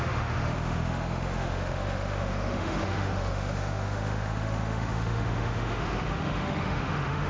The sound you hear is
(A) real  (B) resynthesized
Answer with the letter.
B